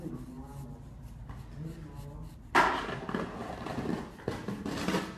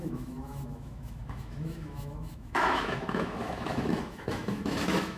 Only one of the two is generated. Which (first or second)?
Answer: second